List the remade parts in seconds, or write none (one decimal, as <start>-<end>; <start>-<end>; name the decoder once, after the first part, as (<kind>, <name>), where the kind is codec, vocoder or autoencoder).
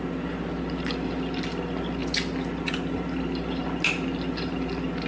none